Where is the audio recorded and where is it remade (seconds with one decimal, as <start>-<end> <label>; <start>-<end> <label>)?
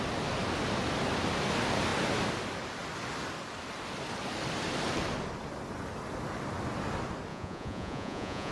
0.0-7.3 recorded; 7.3-8.5 remade